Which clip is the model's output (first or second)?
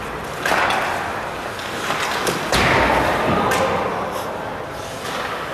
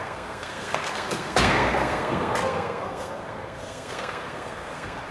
second